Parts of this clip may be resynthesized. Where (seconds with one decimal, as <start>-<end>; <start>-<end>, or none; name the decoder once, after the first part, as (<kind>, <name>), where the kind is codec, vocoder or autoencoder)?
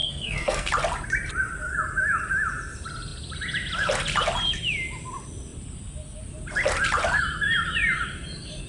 0.0-0.7 (codec, SNAC)